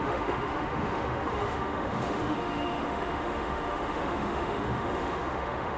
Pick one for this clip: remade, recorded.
remade